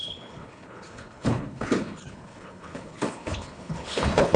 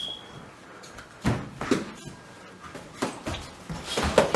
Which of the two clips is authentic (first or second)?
second